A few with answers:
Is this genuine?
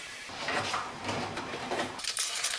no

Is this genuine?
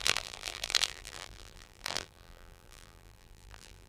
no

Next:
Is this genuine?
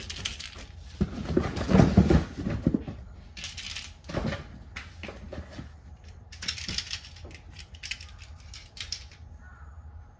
yes